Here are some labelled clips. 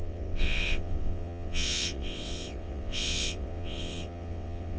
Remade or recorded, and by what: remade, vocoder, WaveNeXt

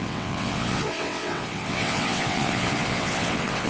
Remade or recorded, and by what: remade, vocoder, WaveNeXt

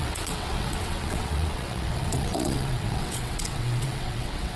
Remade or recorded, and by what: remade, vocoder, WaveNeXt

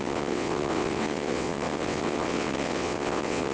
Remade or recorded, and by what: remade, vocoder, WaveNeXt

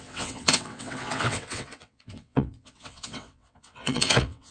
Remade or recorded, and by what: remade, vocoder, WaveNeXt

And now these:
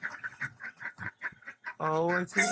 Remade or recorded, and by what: remade, vocoder, WaveNeXt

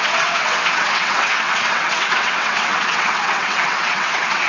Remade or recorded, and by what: remade, vocoder, WaveNeXt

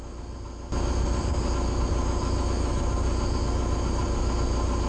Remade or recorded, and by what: recorded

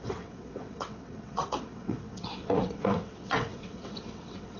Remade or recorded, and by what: remade, vocoder, WaveNeXt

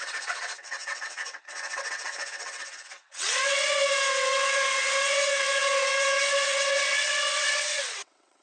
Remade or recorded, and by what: remade, vocoder, WaveNeXt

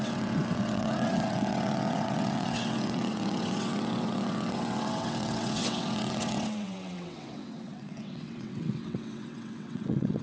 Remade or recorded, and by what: remade, vocoder, WaveNeXt